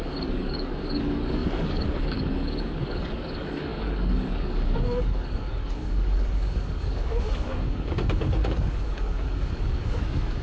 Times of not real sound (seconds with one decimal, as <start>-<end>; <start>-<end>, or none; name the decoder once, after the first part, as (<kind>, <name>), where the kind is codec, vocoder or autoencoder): 0.0-10.4 (codec, DAC)

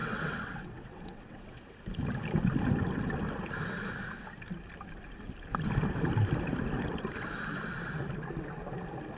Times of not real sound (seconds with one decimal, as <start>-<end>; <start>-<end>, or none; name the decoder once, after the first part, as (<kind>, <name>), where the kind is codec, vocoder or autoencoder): 0.0-1.6 (vocoder, WaveNeXt)

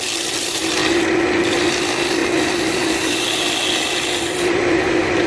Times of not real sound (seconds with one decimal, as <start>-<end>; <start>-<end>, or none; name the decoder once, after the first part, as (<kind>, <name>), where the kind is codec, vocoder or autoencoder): 0.0-0.8 (vocoder, BigVGAN v2); 1.7-2.2; 4.2-5.3

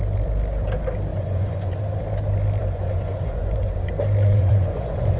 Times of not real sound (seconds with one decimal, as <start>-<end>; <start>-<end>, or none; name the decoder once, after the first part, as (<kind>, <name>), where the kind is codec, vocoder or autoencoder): 1.1-1.8 (vocoder, Vocos); 2.6-3.9; 4.3-5.2

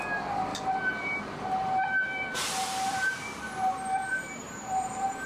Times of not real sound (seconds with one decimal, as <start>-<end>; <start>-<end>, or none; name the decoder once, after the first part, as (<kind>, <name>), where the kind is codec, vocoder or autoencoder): 0.5-3.4 (vocoder, BigVGAN v2); 4.1-5.3

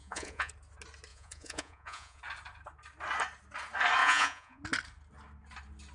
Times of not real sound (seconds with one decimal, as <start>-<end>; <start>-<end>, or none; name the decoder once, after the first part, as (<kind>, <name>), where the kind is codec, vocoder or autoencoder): 0.0-0.5 (vocoder, Vocos); 1.1-2.2; 4.0-4.6

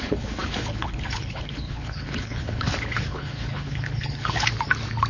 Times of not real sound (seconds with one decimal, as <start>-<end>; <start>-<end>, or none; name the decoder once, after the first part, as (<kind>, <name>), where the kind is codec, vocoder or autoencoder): 0.0-4.5 (codec, HILCodec)

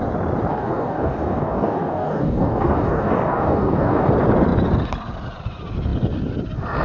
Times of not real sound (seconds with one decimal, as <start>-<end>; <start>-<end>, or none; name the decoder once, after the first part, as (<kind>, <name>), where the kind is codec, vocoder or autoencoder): 0.5-4.1 (codec, DAC)